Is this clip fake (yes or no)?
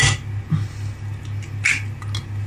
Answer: no